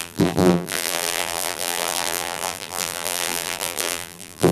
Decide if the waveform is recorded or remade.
remade